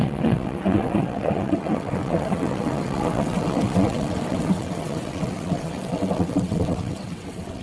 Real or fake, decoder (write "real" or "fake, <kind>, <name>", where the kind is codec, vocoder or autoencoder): fake, vocoder, WaveNeXt